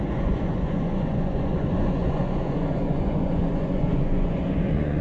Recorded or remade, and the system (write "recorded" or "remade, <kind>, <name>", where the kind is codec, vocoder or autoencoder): remade, vocoder, Vocos